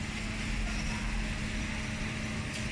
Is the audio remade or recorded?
recorded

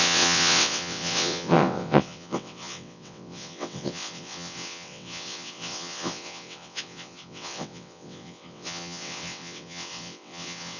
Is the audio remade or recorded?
remade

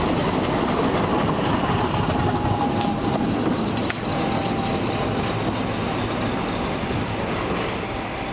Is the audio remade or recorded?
recorded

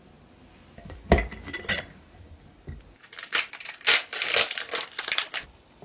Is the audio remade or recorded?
recorded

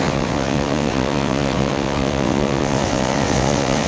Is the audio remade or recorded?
remade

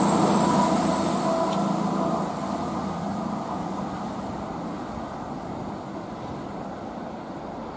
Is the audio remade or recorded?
recorded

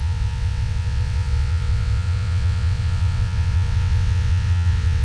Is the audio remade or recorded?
remade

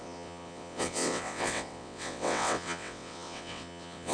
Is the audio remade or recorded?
remade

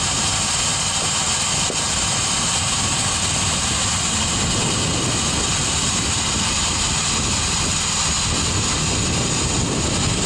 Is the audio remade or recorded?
recorded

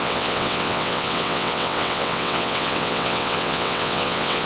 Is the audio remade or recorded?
remade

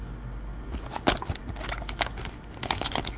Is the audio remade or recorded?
recorded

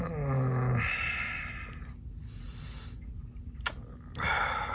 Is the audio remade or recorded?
recorded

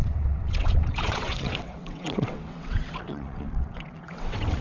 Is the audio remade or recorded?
remade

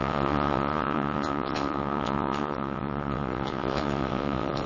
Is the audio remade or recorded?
remade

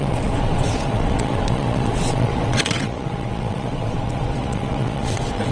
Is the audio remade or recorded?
remade